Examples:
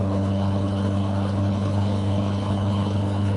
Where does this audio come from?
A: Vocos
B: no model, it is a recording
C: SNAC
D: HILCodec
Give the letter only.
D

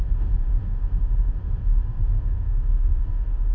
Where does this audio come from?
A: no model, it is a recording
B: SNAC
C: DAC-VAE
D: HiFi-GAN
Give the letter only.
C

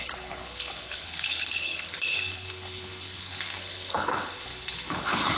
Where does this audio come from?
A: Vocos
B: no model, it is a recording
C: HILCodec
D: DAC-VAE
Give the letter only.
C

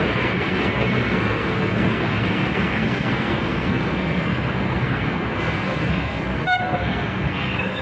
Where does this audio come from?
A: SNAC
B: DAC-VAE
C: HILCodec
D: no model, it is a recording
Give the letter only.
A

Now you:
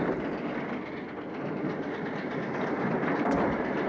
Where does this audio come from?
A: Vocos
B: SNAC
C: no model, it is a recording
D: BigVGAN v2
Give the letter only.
C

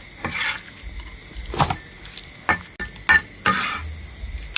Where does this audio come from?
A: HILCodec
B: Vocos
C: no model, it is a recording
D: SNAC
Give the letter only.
C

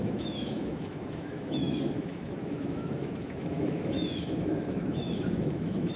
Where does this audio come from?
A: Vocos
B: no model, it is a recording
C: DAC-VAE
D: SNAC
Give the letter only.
C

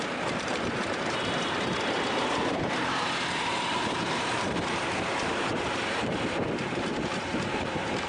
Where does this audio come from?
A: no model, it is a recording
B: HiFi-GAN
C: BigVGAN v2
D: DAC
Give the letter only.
C